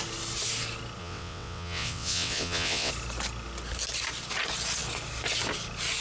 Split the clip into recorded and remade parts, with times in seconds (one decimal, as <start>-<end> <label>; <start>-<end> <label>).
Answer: 0.0-1.0 recorded; 1.0-2.9 remade; 2.9-6.0 recorded